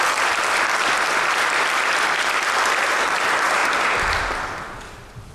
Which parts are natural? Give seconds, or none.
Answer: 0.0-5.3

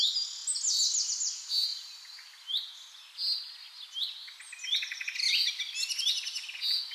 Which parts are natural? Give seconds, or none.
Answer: 0.0-6.9

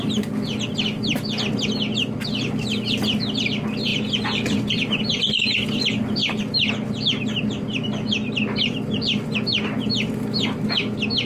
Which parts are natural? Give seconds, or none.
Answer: 0.0-11.2

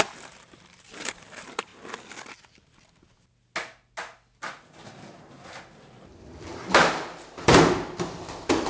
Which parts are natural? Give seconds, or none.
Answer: 1.7-6.9

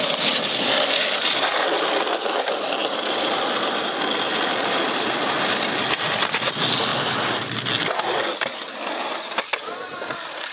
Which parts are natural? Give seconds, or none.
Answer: 0.0-2.8; 3.4-10.5